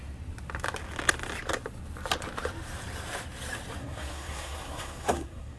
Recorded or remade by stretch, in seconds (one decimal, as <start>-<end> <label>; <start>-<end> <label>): 0.0-3.8 recorded; 3.8-5.6 remade